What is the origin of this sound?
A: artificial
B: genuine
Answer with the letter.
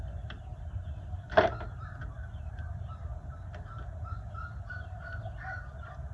B